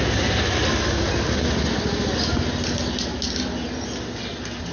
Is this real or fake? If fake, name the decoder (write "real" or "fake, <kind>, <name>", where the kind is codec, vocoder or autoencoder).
real